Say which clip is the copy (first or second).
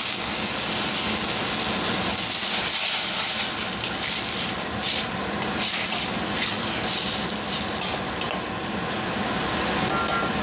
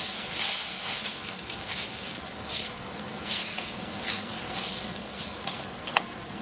second